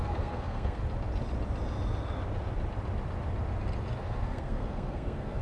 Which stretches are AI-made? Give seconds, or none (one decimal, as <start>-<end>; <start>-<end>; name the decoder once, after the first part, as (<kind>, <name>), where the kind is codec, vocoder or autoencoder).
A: 0.0-0.8 (codec, SNAC); 4.0-5.4